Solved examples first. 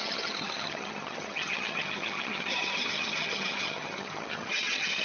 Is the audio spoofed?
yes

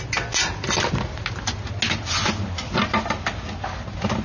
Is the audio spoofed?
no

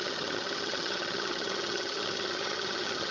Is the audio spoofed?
yes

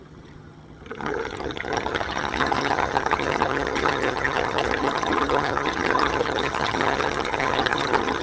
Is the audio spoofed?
yes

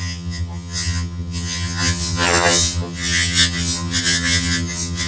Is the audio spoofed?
yes